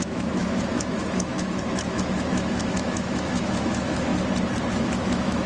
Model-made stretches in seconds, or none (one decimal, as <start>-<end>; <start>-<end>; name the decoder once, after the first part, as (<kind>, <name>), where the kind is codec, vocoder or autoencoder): 0.0-4.1 (autoencoder, DAC-VAE); 4.7-5.5